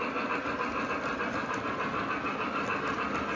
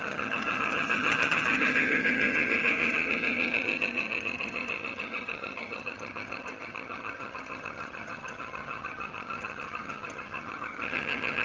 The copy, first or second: second